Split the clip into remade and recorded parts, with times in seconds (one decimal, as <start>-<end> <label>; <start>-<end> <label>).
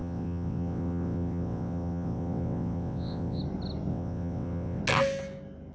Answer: 0.0-3.4 remade; 3.4-3.9 recorded; 3.9-4.8 remade; 4.8-5.7 recorded